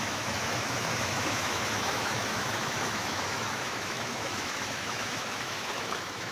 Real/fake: fake